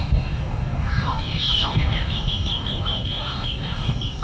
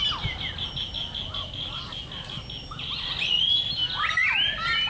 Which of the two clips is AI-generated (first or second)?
first